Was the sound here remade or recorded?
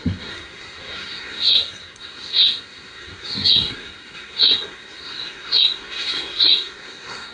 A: remade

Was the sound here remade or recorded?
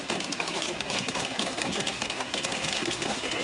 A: remade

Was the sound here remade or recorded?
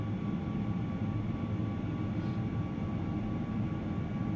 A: recorded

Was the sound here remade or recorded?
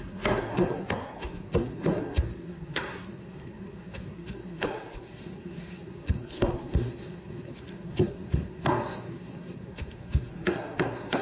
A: remade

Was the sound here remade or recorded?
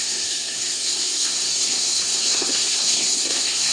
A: remade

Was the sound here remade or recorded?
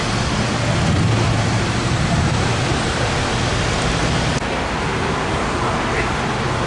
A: recorded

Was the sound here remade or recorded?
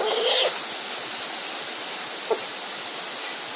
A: recorded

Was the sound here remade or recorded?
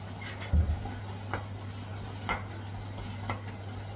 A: recorded